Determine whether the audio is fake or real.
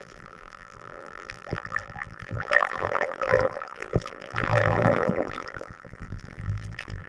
fake